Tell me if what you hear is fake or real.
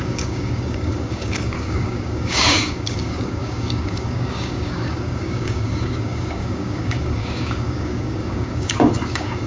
fake